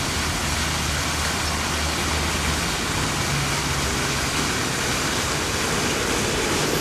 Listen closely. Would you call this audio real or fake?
real